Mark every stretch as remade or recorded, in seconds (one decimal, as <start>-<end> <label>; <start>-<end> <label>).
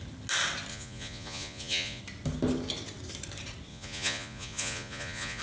0.0-0.7 recorded; 0.7-2.0 remade; 2.0-3.7 recorded; 3.7-5.4 remade